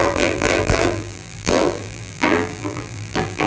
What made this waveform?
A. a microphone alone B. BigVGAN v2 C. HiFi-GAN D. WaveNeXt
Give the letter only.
B